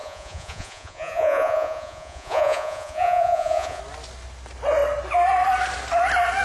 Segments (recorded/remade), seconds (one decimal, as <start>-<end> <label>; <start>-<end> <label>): 0.0-3.8 remade; 3.8-6.4 recorded